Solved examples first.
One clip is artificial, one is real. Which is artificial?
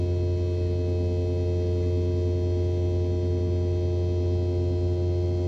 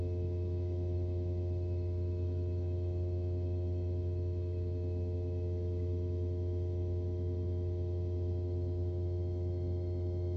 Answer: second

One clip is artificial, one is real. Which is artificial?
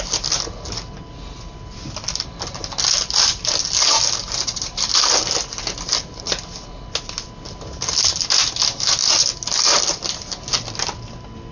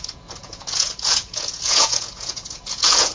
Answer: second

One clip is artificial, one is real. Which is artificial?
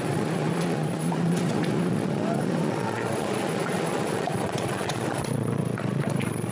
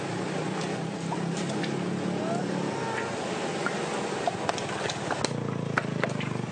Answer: first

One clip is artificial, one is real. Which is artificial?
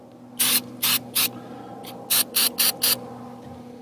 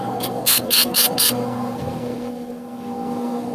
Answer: second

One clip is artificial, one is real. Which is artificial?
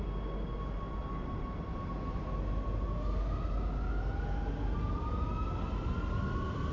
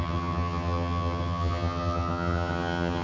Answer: second